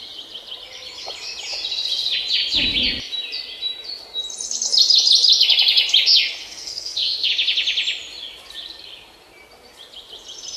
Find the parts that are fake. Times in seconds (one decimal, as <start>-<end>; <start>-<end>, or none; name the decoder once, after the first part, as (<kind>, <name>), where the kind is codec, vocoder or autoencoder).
6.4-7.3 (codec, SNAC)